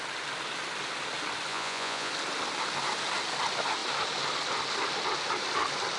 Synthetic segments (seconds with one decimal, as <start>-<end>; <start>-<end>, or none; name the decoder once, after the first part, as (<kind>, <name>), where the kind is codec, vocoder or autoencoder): 1.5-2.1 (vocoder, Vocos)